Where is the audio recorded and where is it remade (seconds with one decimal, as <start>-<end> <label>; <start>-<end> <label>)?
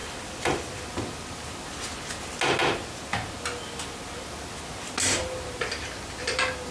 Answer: 0.0-6.7 recorded